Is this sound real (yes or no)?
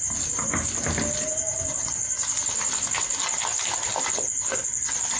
yes